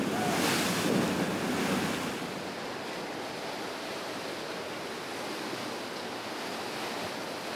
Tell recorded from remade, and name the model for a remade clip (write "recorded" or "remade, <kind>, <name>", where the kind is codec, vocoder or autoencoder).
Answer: recorded